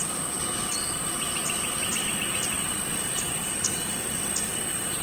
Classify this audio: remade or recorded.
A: recorded